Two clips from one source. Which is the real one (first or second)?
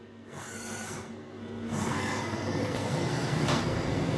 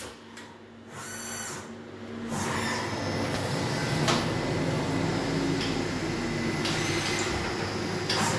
second